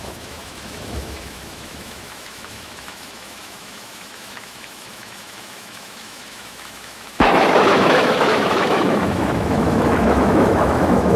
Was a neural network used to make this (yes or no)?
yes